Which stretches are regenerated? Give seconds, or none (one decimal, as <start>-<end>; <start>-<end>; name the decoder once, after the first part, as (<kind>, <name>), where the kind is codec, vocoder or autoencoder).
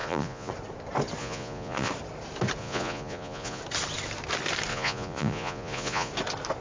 0.0-0.5 (vocoder, Vocos); 1.2-1.9; 2.6-3.6; 4.7-6.1